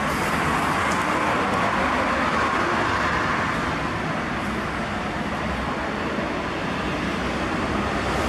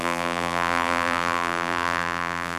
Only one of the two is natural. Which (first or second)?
first